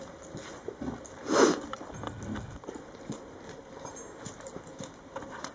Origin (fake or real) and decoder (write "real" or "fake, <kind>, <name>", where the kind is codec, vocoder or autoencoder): real